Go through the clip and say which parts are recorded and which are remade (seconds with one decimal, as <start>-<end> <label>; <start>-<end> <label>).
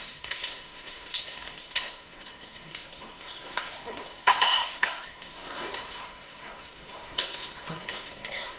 0.0-8.6 remade